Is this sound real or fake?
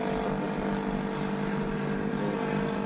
real